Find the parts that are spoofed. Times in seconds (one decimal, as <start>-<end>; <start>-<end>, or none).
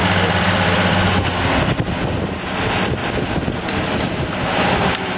0.0-2.1; 3.0-5.2